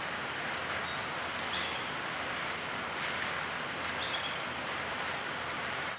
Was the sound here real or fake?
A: real